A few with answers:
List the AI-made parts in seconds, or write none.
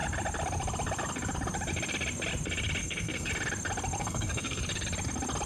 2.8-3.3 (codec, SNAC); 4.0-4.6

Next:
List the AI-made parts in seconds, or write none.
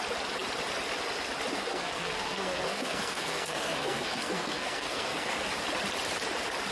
1.5-5.5 (codec, SNAC)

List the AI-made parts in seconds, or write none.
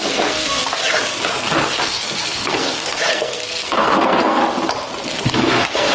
0.0-0.6 (codec, SNAC); 1.3-4.4; 5.1-5.9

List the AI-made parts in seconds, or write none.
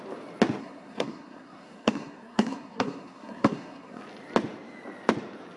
0.6-4.0 (codec, SNAC)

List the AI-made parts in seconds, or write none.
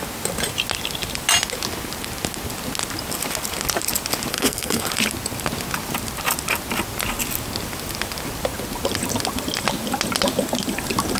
4.3-4.9 (codec, SNAC)